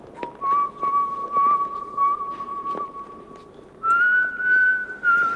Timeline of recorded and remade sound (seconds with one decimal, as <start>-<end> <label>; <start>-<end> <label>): 0.0-5.4 recorded